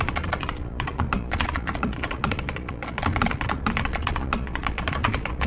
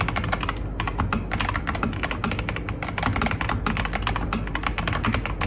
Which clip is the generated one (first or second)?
first